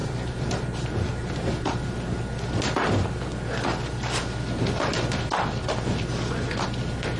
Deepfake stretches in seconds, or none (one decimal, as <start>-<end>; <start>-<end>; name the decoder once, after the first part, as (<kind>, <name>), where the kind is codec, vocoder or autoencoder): 0.0-1.5 (vocoder, BigVGAN v2)